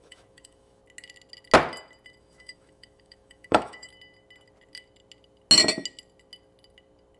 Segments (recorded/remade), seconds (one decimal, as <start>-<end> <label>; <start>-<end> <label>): 0.0-0.8 remade; 0.8-2.2 recorded; 2.2-3.9 remade; 3.9-7.2 recorded